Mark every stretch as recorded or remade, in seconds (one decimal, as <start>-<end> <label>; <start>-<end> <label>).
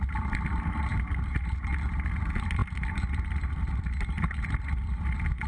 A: 0.0-5.5 recorded